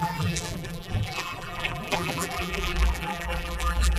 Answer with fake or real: fake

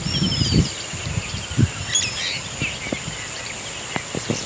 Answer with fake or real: real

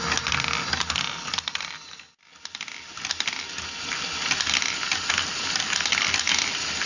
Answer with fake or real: real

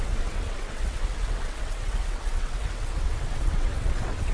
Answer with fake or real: fake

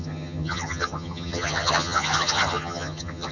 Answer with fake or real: fake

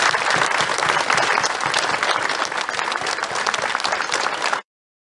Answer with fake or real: fake